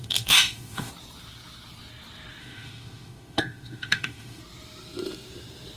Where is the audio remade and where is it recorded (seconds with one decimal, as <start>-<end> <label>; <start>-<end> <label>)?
0.0-0.9 remade; 0.9-2.4 recorded; 2.4-4.4 remade; 4.4-5.8 recorded